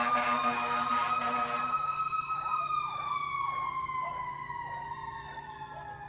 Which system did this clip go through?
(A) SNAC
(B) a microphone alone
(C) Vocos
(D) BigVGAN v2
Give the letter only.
B